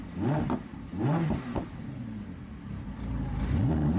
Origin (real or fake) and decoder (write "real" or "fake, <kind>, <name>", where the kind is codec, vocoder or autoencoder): real